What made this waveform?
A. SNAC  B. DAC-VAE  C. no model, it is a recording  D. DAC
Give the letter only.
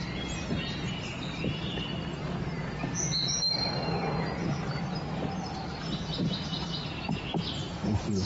C